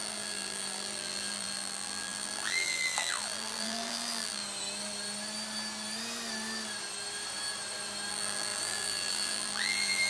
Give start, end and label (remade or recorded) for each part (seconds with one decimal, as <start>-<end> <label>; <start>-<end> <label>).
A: 0.0-4.4 remade; 4.4-8.1 recorded; 8.1-10.1 remade